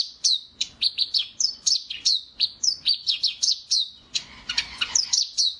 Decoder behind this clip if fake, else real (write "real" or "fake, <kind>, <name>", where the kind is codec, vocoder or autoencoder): fake, vocoder, Vocos